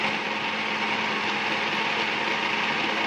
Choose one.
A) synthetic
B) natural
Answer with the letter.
B